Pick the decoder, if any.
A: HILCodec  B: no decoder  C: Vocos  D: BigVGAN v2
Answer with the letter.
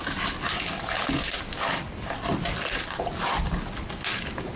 B